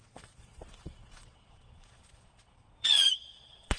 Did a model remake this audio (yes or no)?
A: yes